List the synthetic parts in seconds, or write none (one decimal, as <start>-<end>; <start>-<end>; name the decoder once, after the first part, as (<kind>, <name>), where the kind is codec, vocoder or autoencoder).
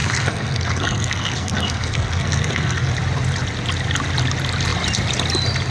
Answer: 0.0-2.9 (codec, SNAC)